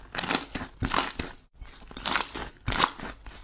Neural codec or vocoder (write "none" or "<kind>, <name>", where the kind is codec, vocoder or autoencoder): none